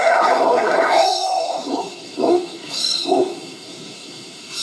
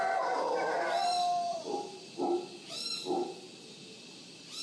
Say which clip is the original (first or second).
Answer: second